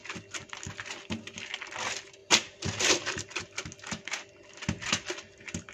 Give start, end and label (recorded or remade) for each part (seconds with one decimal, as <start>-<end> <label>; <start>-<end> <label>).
0.0-2.2 recorded; 2.2-3.4 remade; 3.4-5.7 recorded